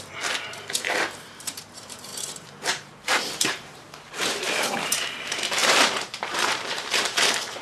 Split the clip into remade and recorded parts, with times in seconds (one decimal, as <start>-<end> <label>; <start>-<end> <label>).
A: 0.0-7.6 remade